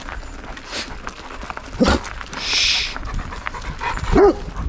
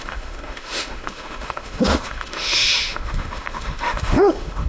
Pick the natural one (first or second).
first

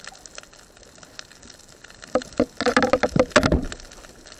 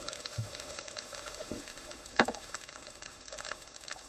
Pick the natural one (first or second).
first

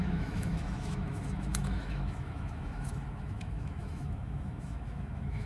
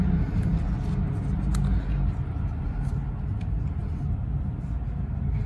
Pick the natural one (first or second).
second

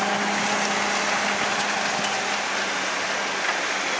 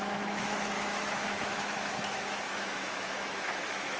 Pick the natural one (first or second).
first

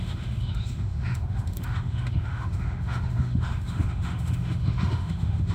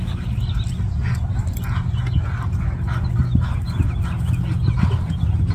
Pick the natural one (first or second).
second